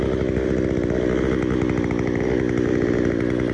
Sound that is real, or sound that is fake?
real